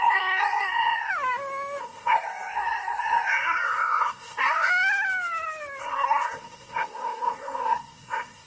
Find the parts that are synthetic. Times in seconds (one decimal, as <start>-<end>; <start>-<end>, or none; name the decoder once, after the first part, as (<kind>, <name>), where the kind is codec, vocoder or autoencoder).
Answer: 0.0-1.1 (codec, SNAC); 1.8-4.7; 5.8-8.5